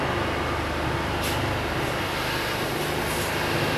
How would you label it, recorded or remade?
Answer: recorded